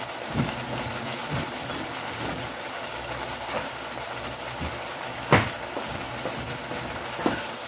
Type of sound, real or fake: real